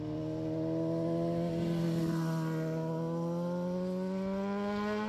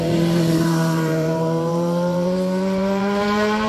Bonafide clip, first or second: first